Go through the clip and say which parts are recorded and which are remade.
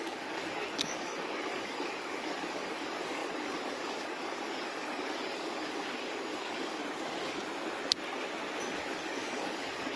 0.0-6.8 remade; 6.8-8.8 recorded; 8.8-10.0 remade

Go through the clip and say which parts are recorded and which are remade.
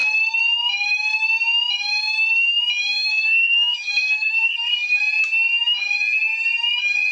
0.0-3.1 recorded; 3.1-5.0 remade; 5.0-7.1 recorded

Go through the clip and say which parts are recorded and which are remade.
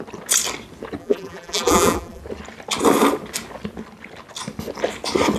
0.0-1.0 recorded; 1.0-2.2 remade; 2.2-5.4 recorded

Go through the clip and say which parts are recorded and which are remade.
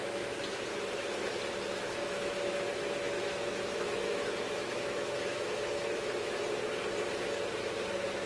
0.0-0.6 remade; 0.6-2.0 recorded; 2.0-6.4 remade; 6.4-8.3 recorded